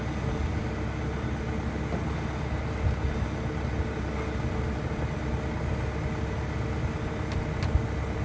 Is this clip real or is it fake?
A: real